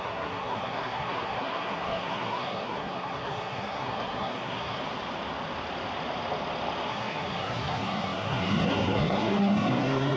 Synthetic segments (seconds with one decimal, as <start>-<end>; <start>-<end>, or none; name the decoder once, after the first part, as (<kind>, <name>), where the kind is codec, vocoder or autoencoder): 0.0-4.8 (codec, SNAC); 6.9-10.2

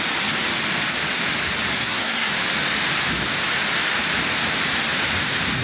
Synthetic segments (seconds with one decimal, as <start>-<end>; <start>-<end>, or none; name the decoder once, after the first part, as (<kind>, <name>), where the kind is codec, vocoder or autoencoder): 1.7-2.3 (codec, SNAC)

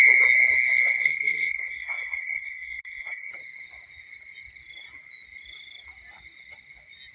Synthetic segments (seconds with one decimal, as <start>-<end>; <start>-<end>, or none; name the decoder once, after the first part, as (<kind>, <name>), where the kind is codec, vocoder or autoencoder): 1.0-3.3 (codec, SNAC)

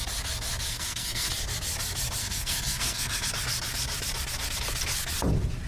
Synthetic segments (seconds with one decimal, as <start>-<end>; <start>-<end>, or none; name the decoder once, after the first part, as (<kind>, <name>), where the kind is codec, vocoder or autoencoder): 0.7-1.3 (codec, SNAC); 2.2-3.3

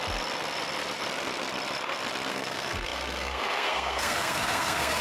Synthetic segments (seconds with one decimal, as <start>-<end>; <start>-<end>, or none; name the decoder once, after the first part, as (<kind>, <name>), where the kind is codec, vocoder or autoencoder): 2.3-5.0 (codec, SNAC)

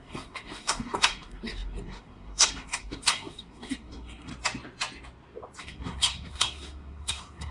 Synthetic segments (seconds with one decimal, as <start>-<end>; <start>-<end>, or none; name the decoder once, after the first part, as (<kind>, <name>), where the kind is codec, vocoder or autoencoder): 0.0-4.3 (codec, SNAC); 5.6-7.5